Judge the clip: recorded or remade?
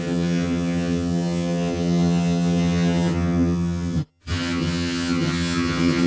remade